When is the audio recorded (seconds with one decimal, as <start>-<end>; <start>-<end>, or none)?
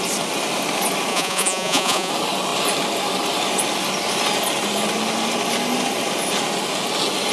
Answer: 0.0-1.1; 2.1-7.3